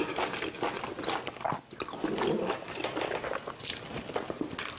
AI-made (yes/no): no